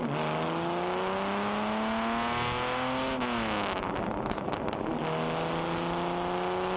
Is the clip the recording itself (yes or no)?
yes